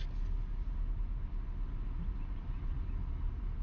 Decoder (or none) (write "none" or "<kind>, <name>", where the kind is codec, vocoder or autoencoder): none